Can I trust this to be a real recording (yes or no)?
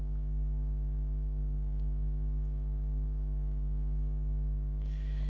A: no